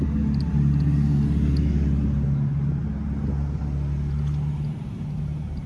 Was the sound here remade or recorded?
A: recorded